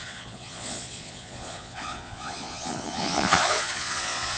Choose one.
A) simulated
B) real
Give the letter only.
A